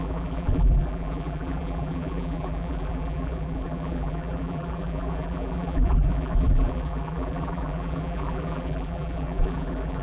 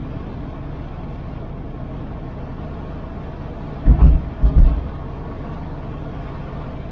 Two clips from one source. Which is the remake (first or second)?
first